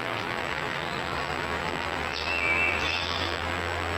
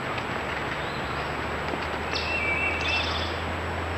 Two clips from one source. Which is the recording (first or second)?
second